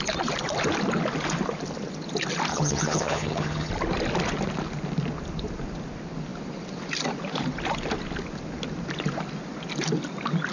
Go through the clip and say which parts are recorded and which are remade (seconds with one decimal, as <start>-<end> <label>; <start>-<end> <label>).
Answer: 0.0-2.5 recorded; 2.5-3.7 remade; 3.7-10.5 recorded